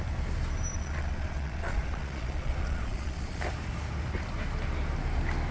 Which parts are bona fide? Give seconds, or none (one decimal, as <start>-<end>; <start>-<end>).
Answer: 0.0-0.7; 3.4-5.5